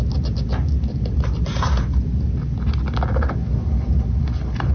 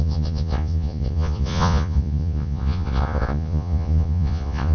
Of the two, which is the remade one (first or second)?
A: second